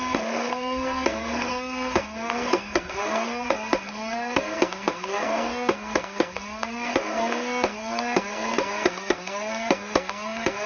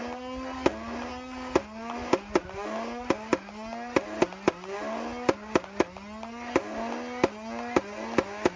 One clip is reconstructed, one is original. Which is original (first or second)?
second